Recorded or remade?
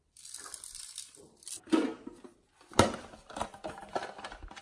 recorded